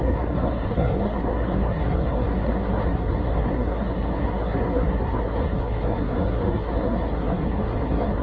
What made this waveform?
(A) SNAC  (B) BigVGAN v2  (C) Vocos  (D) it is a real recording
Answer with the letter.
A